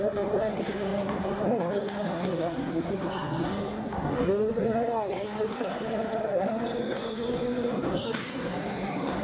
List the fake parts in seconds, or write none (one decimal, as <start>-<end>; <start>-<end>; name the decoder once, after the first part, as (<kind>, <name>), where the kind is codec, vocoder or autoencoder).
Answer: 0.0-9.2 (codec, SNAC)